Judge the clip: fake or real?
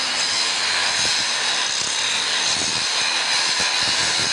real